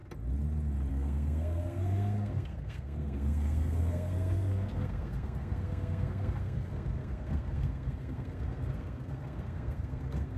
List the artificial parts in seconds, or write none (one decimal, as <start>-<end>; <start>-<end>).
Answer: 0.9-10.4